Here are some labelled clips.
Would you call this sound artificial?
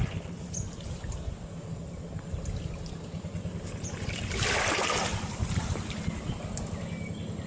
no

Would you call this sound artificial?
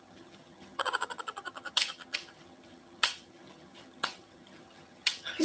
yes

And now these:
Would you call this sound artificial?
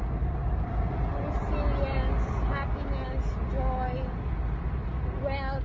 no